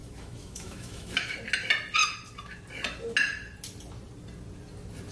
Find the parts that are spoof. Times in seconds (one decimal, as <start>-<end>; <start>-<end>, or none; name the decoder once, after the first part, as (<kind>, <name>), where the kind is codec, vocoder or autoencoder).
0.0-1.3 (autoencoder, DAC-VAE)